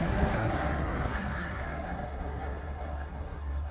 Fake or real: fake